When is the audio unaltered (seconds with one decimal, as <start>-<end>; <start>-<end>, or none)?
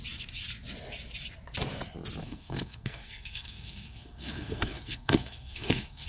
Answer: 0.0-2.2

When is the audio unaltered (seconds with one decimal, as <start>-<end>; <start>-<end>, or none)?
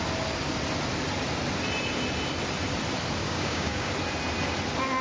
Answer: 0.0-3.2; 3.9-5.0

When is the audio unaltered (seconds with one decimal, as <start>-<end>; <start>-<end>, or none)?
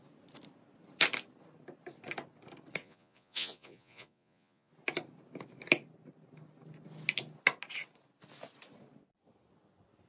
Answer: 0.0-2.8; 4.7-10.1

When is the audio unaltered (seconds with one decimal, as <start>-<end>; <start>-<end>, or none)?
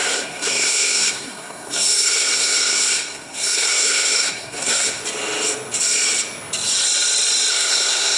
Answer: 5.0-7.5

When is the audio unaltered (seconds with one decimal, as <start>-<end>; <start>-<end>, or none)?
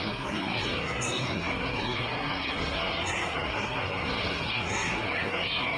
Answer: none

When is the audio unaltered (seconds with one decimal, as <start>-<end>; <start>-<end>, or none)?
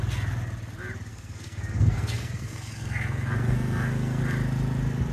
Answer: 0.0-1.1; 4.2-5.1